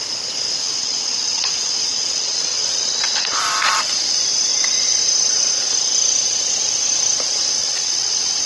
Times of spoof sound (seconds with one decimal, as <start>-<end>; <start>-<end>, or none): 0.6-3.4; 7.6-8.5